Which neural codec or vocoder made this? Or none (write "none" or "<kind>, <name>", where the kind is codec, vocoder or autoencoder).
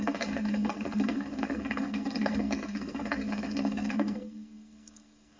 codec, SNAC